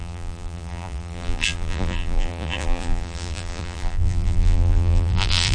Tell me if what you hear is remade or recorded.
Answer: remade